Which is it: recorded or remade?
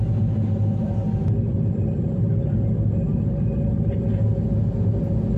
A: recorded